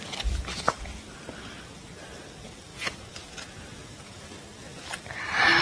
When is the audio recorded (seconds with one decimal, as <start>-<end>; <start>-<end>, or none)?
0.0-2.7; 4.2-5.6